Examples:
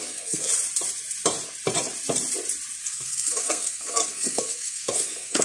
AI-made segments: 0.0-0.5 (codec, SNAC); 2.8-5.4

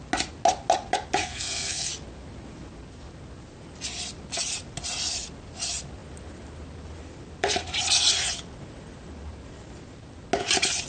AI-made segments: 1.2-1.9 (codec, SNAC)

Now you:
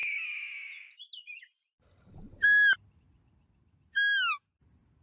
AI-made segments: none